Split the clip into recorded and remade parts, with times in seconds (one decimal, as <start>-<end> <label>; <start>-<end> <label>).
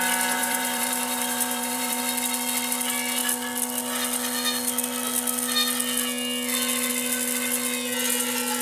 0.0-0.4 recorded; 0.4-2.0 remade; 2.0-8.6 recorded